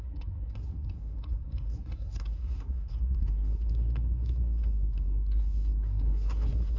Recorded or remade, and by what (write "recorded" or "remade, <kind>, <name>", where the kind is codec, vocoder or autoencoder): remade, codec, SNAC